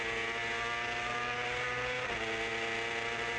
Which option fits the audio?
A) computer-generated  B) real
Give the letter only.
B